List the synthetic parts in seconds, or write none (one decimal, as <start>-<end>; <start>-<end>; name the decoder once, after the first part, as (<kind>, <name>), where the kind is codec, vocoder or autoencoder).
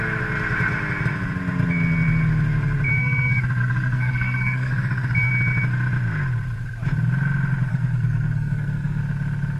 2.9-5.3 (codec, SNAC); 7.7-9.0